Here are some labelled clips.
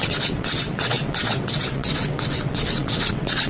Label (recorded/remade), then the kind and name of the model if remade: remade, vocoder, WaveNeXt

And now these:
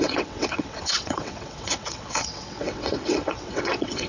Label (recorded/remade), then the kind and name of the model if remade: remade, vocoder, WaveNeXt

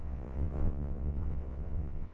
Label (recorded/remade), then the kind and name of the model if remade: remade, vocoder, WaveNeXt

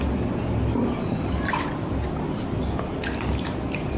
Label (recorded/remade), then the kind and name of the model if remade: recorded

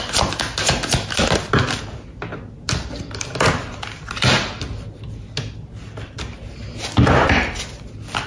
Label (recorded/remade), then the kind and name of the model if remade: recorded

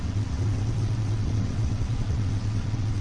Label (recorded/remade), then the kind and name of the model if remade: remade, vocoder, WaveNeXt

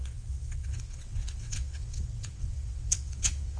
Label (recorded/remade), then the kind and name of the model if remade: remade, vocoder, WaveNeXt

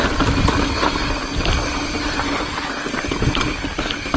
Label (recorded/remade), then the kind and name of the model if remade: recorded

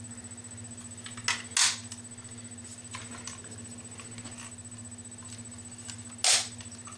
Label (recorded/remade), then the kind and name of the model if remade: recorded